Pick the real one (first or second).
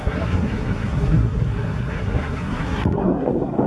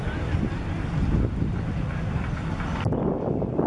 second